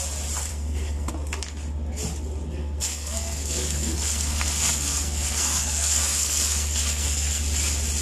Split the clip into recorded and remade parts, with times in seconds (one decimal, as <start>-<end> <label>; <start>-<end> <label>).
0.0-0.5 recorded; 0.5-1.1 remade; 1.1-2.6 recorded; 2.6-7.4 remade; 7.4-8.0 recorded